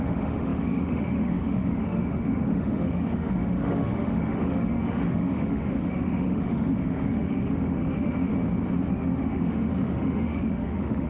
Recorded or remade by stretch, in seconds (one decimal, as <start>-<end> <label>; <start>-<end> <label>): 0.0-8.3 remade; 8.3-8.9 recorded; 8.9-11.1 remade